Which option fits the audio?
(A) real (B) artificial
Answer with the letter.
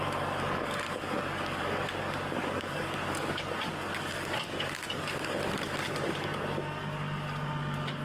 B